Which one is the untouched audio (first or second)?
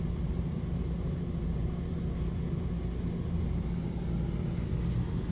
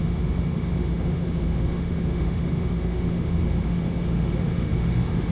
first